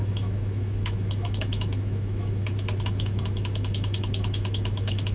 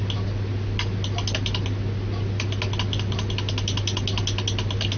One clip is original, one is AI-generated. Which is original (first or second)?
second